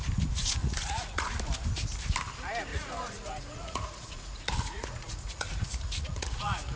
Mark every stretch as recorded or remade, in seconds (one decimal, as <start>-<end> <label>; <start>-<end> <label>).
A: 0.0-0.6 recorded; 0.6-1.3 remade; 1.3-2.7 recorded; 2.7-6.8 remade